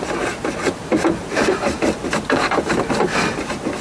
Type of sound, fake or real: real